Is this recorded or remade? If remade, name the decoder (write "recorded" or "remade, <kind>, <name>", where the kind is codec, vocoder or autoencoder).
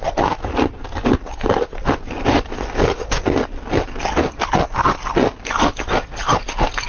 recorded